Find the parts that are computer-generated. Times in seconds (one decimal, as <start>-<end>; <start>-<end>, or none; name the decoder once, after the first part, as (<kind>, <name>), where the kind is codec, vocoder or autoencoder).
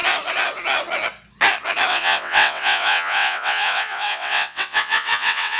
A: 1.9-5.6 (vocoder, WaveNeXt)